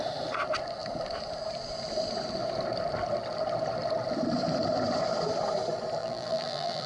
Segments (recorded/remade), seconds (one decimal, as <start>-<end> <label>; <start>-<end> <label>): 0.0-6.0 recorded; 6.0-6.9 remade